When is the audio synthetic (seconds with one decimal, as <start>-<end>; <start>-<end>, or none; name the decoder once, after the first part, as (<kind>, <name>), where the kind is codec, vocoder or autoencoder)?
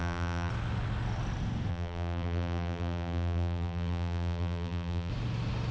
0.0-0.5 (vocoder, BigVGAN v2); 1.7-5.1